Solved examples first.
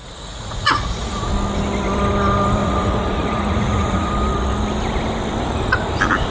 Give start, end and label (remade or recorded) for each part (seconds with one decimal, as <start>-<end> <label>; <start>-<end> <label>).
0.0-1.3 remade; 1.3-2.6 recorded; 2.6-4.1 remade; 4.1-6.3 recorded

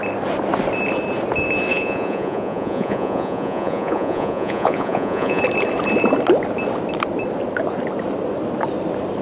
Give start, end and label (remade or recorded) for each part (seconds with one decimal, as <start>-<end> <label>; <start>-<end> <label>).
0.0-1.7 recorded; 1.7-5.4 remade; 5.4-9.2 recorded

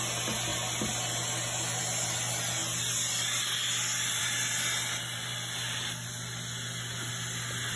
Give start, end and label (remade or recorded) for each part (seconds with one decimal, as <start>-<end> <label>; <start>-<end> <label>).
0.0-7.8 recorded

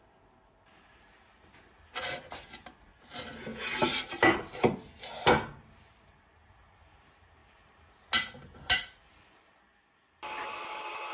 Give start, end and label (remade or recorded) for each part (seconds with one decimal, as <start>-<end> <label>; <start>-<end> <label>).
0.0-11.1 recorded